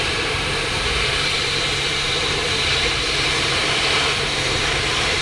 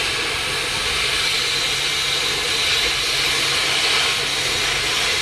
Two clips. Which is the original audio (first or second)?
second